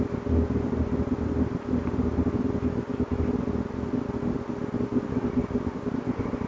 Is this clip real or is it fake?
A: real